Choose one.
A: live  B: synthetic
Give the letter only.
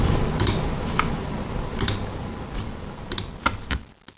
A